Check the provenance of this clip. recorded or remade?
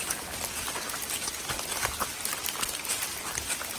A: recorded